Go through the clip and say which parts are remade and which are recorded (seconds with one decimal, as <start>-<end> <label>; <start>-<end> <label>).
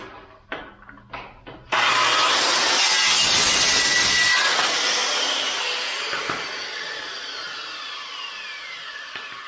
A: 0.0-9.5 recorded